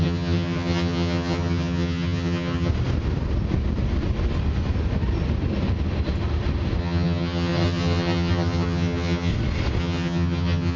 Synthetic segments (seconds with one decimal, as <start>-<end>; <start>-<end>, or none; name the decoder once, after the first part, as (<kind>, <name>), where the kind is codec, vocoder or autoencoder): 0.0-2.7 (vocoder, HiFi-GAN); 6.8-9.3; 9.8-10.8